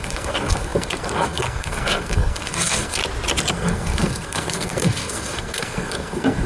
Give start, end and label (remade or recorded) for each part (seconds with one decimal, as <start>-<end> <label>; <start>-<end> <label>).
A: 0.0-3.0 remade; 3.0-3.5 recorded; 3.5-6.5 remade